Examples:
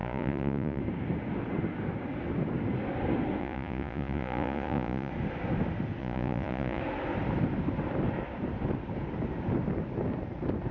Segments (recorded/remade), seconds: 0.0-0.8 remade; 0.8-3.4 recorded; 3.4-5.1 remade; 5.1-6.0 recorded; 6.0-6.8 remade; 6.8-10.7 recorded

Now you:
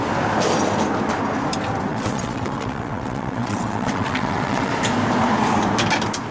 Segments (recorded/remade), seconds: 0.0-1.9 recorded; 1.9-4.7 remade; 4.7-6.3 recorded

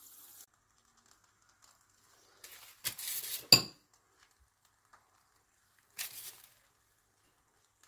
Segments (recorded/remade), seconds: 0.0-4.9 recorded; 4.9-6.3 remade; 6.3-7.9 recorded

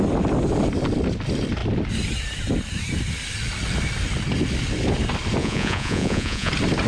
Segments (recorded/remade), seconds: 0.0-5.4 recorded; 5.4-6.5 remade; 6.5-6.9 recorded

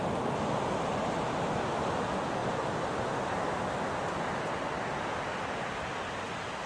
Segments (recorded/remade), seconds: 0.0-6.7 recorded